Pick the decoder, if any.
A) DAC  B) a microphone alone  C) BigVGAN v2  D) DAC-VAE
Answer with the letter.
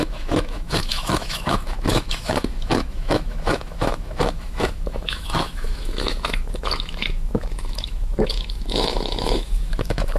D